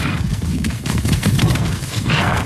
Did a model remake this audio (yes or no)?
yes